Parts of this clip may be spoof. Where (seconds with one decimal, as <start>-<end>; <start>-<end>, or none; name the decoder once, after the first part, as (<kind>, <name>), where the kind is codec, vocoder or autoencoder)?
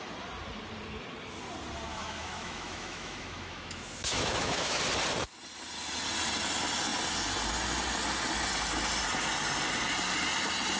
1.9-4.8 (autoencoder, DAC-VAE)